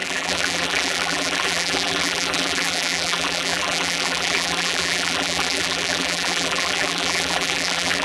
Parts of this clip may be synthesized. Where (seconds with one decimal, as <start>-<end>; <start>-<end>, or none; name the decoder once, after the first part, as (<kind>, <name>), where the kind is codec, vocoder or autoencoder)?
0.0-8.0 (vocoder, BigVGAN v2)

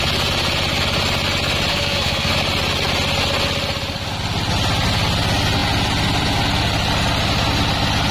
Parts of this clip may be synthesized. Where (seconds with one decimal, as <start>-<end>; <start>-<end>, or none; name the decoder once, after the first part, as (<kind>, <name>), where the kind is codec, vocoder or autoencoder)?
1.7-2.3 (codec, SNAC)

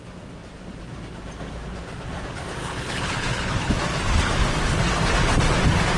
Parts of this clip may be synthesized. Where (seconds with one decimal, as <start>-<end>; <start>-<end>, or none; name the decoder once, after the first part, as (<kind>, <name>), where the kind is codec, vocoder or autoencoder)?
2.6-3.7 (codec, HILCodec)

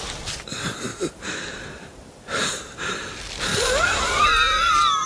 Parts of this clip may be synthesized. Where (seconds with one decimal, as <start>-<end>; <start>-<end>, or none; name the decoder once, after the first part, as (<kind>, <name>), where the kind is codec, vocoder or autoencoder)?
0.9-3.0 (vocoder, BigVGAN v2); 3.5-5.1

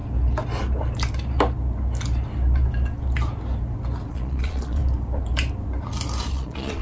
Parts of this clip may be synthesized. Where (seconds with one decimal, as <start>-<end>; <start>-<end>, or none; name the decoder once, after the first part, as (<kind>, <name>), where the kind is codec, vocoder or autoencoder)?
4.1-4.8 (vocoder, Vocos); 6.3-6.8

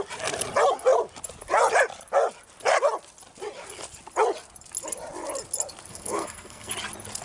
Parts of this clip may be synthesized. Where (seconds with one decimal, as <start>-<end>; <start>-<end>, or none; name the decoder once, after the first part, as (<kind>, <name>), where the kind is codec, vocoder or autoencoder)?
5.9-6.7 (codec, SNAC)